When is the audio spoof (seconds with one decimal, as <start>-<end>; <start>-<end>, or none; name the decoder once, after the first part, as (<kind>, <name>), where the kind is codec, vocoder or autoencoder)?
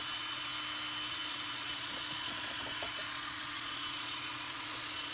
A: 0.0-0.5 (vocoder, Vocos); 1.1-5.1